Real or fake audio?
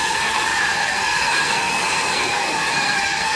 fake